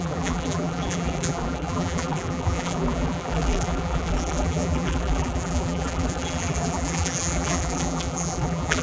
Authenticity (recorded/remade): remade